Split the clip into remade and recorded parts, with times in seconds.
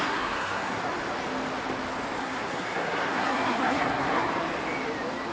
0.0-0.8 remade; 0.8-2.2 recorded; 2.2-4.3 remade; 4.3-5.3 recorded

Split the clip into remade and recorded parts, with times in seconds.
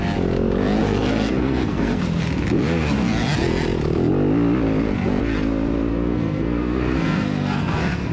0.0-0.8 recorded; 0.8-2.0 remade; 2.0-5.9 recorded; 5.9-8.1 remade